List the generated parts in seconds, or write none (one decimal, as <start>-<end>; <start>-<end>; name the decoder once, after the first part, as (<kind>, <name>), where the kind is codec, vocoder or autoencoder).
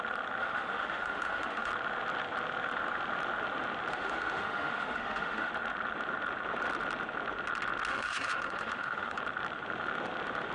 0.4-1.7 (autoencoder, DAC-VAE); 3.9-5.5; 7.9-9.2